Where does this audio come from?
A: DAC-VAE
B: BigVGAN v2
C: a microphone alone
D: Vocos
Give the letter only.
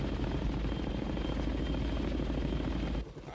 C